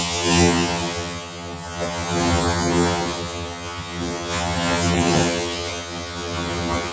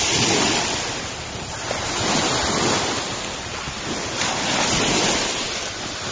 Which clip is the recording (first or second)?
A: second